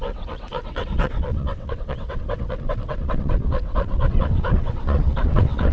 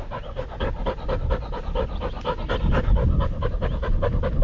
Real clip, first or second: second